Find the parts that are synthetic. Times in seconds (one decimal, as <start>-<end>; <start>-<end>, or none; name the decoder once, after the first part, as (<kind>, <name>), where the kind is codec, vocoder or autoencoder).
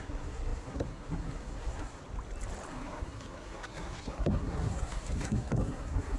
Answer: 0.0-2.0 (codec, SNAC); 2.7-6.2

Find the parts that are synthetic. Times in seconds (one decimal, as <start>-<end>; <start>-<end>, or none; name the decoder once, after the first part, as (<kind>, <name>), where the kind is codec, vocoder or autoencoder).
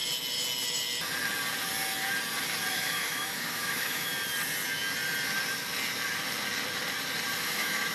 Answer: 2.7-4.1 (autoencoder, DAC-VAE); 7.4-7.9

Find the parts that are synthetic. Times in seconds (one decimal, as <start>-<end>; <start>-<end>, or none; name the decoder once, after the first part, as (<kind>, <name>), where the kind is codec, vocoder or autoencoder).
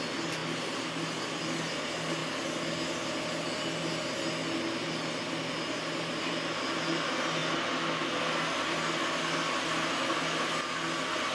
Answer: none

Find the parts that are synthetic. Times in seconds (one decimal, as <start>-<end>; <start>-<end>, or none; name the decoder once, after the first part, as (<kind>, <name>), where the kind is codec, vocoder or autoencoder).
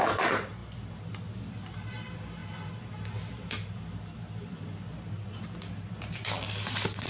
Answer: 0.0-0.6 (vocoder, BigVGAN v2); 1.4-7.1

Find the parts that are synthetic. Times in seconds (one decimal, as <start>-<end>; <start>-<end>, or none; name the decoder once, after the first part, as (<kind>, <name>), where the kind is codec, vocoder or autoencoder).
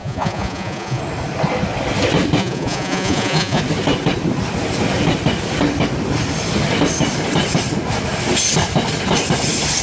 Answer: 0.0-1.0 (vocoder, Vocos); 2.4-3.6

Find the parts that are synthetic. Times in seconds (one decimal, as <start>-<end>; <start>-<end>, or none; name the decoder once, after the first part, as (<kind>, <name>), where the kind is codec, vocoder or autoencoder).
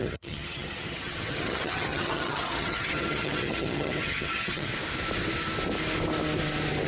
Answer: 0.0-4.7 (vocoder, HiFi-GAN)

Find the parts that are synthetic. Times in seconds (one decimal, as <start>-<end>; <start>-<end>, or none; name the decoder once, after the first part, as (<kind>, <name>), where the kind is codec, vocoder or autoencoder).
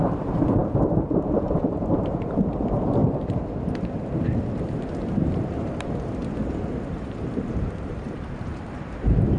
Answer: 0.0-3.0 (vocoder, BigVGAN v2); 4.6-6.2; 6.9-9.4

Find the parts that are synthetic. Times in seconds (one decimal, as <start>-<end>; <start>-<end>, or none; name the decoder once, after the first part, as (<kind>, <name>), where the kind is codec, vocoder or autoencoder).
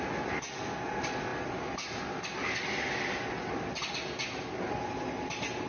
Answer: none